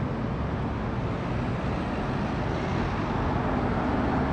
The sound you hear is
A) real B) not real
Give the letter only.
A